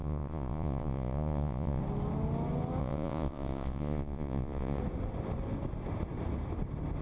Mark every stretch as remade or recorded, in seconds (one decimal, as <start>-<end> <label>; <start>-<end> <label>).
0.0-1.8 remade; 1.8-2.8 recorded; 2.8-4.8 remade; 4.8-7.0 recorded

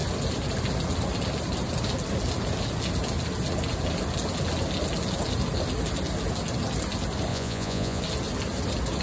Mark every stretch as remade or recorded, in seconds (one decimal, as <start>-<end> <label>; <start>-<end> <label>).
0.0-7.3 recorded; 7.3-8.0 remade; 8.0-9.0 recorded

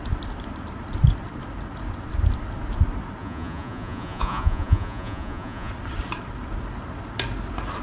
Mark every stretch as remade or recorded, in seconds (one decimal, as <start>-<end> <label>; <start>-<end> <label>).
0.0-3.2 recorded; 3.2-5.7 remade; 5.7-7.8 recorded

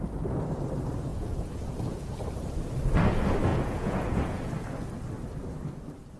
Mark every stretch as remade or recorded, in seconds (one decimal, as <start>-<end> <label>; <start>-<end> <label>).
0.0-1.1 recorded; 1.1-2.1 remade; 2.1-3.5 recorded; 3.5-4.5 remade; 4.5-6.2 recorded

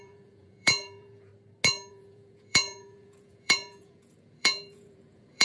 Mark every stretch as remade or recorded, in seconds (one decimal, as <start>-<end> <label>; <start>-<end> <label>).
0.0-1.3 remade; 1.3-1.9 recorded; 1.9-5.4 remade

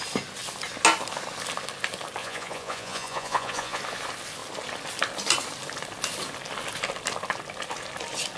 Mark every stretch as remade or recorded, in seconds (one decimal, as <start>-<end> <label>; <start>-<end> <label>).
0.0-2.2 recorded; 2.2-3.8 remade; 3.8-8.4 recorded

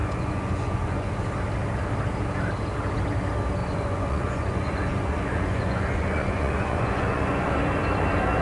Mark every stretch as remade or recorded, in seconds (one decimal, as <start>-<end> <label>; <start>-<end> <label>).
0.0-1.1 remade; 1.1-3.6 recorded; 3.6-7.6 remade; 7.6-8.4 recorded